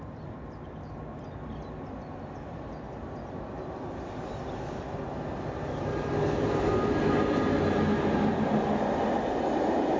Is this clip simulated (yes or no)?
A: no